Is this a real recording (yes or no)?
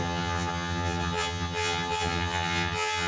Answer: no